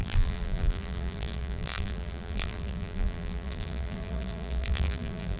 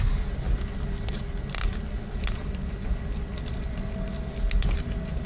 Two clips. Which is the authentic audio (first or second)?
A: second